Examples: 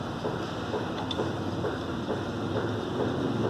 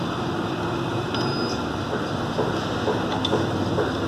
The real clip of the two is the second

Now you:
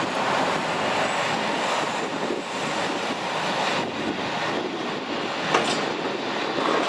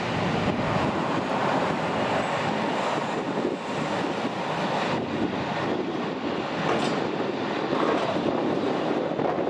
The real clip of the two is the first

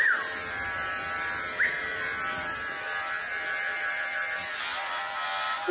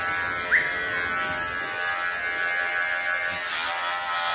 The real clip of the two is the second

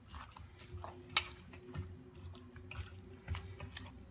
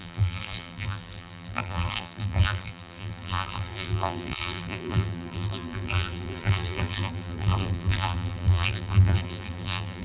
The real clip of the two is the first